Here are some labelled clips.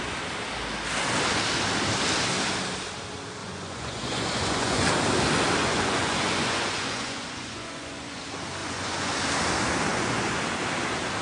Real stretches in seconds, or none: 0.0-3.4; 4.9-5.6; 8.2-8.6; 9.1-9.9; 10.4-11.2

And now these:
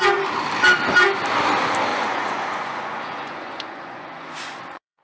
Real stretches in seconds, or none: 0.0-1.9